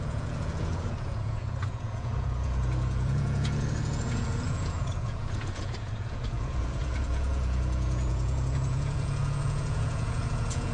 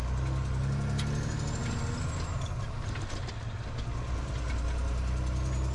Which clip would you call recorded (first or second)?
second